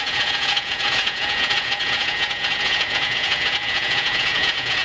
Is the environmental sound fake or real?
fake